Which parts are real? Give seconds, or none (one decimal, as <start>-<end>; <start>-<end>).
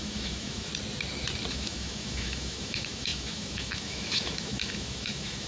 0.7-1.5